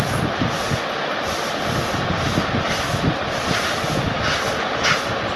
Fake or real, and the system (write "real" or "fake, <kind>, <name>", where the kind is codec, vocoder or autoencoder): real